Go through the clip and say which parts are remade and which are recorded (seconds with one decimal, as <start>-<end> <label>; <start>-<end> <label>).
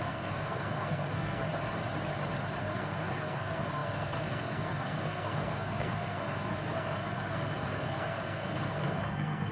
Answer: 0.0-1.4 remade; 1.4-2.6 recorded; 2.6-9.5 remade